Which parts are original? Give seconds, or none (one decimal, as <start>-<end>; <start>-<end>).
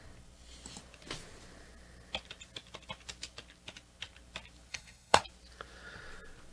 0.0-4.7; 5.2-6.5